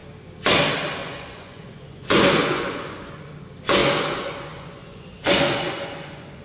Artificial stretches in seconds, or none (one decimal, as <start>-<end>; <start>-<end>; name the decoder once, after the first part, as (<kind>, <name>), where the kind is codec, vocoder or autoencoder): 1.0-3.3 (vocoder, Vocos); 3.8-6.4